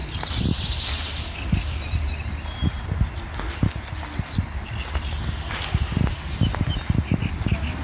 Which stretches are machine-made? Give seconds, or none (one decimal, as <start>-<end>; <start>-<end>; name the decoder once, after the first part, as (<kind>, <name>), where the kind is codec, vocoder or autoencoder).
none